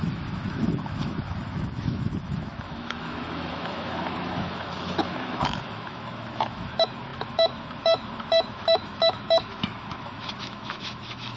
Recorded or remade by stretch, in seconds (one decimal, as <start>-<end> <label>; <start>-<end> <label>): 0.0-11.4 remade